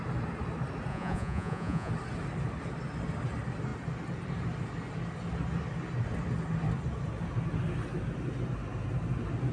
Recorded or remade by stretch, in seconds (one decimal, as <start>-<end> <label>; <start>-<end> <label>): 0.0-0.9 recorded; 0.9-1.9 remade; 1.9-9.5 recorded